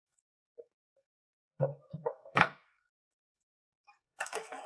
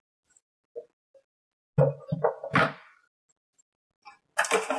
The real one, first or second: second